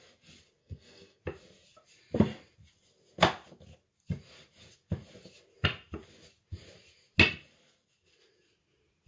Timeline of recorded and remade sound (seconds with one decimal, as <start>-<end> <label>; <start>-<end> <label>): 0.0-0.6 recorded; 0.6-1.2 remade; 1.2-9.1 recorded